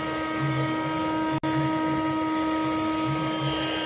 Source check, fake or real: real